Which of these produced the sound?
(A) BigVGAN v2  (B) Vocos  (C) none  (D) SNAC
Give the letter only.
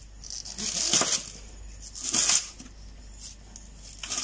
C